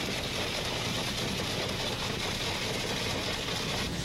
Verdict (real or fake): real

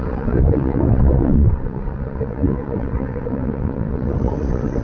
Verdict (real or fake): fake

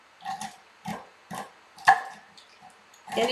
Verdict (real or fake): real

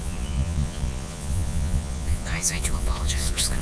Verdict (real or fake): fake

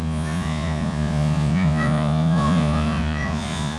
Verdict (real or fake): fake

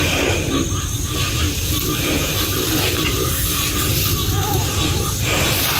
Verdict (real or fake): real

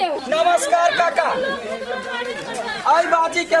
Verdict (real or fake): real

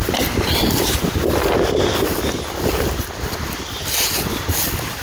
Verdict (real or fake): real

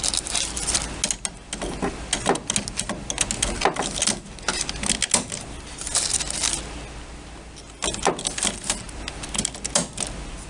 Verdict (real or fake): real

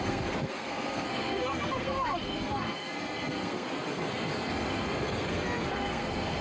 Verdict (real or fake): fake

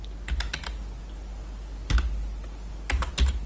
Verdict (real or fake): real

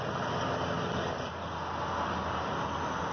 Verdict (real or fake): real